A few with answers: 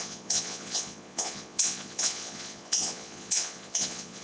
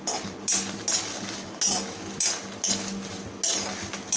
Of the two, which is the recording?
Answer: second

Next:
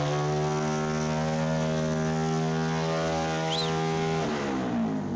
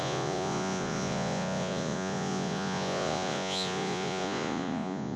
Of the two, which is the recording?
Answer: first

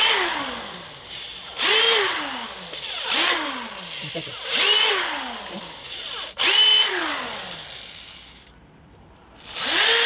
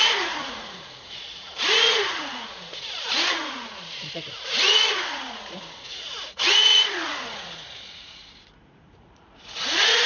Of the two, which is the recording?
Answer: first